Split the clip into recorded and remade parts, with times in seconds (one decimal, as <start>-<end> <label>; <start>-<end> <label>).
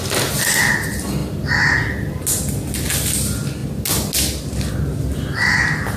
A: 0.0-1.2 recorded; 1.2-2.2 remade; 2.2-6.0 recorded